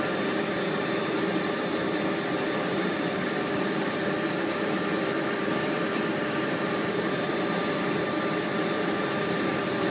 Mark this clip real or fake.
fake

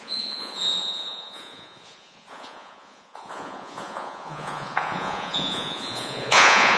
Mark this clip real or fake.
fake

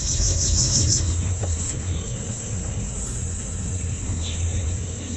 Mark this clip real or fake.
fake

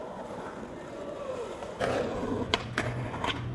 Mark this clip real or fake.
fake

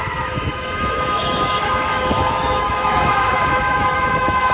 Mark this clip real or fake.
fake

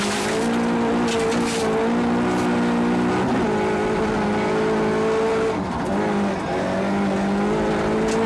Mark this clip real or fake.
real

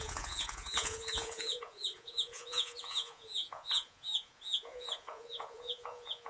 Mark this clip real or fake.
fake